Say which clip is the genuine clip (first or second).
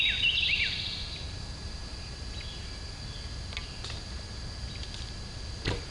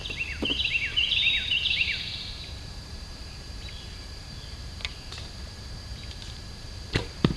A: first